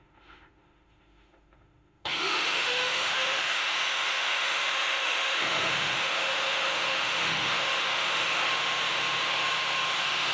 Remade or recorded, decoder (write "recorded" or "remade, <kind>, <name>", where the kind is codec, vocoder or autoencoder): remade, autoencoder, DAC-VAE